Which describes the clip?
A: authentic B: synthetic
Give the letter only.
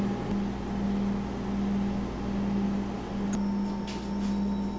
A